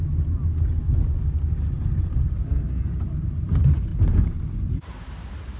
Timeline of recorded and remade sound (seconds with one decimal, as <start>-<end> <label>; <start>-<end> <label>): 0.0-0.4 remade; 0.4-2.0 recorded; 2.0-3.9 remade; 3.9-4.6 recorded; 4.6-5.6 remade